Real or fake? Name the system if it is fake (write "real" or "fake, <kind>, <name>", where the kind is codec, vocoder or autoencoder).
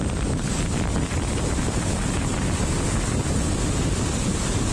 real